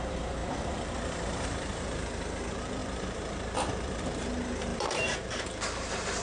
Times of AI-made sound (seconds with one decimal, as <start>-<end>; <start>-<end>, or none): 0.0-6.2